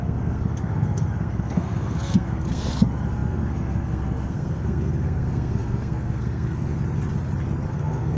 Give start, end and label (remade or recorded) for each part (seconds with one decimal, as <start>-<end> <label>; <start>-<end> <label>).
0.0-6.7 remade; 6.7-7.7 recorded; 7.7-8.2 remade